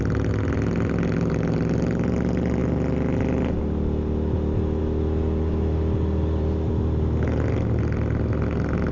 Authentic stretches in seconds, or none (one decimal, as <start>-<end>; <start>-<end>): 0.0-8.9